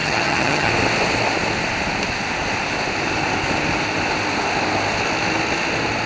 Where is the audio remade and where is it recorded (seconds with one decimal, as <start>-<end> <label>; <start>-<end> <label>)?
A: 0.0-0.7 remade; 0.7-6.1 recorded